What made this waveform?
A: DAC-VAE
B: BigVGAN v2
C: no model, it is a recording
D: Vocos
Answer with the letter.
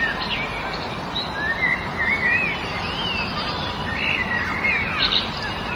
C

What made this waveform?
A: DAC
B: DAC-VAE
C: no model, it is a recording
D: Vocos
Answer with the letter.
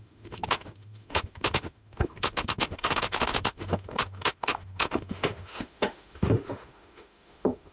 B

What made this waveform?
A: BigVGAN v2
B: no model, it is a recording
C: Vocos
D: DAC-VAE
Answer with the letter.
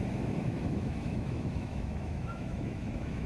D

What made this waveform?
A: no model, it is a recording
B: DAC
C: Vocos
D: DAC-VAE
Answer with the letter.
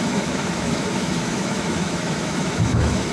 D